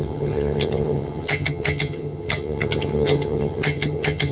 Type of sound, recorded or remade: remade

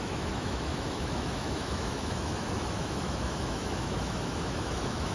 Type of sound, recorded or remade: remade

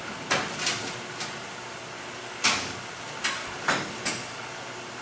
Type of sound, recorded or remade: recorded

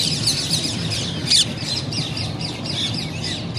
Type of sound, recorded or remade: recorded